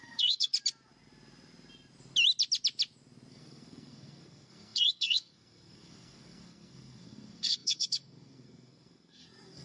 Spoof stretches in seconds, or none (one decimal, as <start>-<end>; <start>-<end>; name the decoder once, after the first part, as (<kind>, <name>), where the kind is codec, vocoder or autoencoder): 0.0-0.5 (codec, SNAC); 3.3-9.6